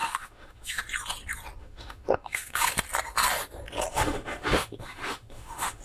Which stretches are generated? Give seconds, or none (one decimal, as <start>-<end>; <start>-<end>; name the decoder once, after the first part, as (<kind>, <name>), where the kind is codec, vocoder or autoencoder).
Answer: 0.0-0.8 (autoencoder, DAC-VAE); 1.6-2.7; 3.9-5.8